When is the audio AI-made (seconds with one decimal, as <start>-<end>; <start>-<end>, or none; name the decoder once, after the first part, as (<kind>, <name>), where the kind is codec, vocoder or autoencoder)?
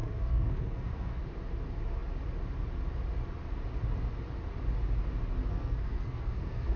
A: 0.0-1.2 (codec, SNAC); 5.5-6.8